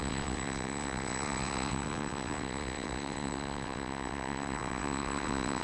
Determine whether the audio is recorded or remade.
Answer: remade